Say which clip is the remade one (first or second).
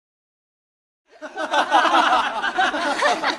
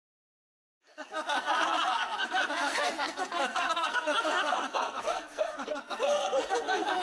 second